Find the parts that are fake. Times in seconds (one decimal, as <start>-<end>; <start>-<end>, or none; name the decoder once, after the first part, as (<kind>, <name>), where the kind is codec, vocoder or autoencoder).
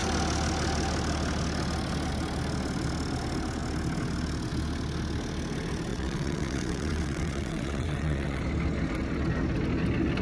5.9-8.4 (vocoder, WaveNeXt)